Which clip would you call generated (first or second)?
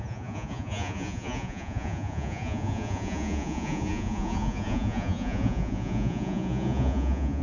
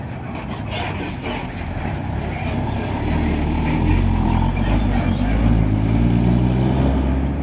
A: first